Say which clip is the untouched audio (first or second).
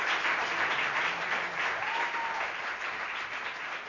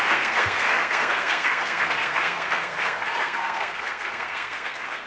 first